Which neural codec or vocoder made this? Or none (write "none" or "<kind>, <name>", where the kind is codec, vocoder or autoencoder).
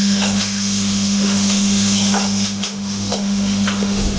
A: autoencoder, DAC-VAE